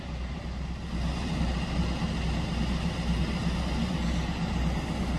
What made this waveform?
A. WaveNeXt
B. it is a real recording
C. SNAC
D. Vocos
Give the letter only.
B